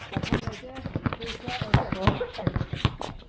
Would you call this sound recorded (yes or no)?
yes